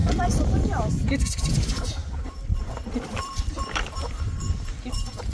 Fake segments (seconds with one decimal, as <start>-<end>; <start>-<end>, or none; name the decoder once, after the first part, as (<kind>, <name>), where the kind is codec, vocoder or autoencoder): 0.0-5.3 (vocoder, BigVGAN v2)